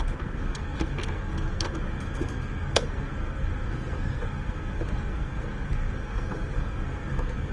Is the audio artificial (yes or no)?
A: yes